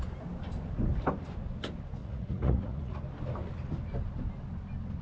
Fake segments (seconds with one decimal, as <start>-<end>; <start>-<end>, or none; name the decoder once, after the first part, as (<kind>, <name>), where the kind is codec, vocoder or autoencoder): 2.0-3.0 (vocoder, Vocos)